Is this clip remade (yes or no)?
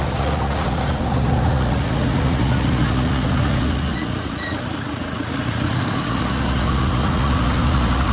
yes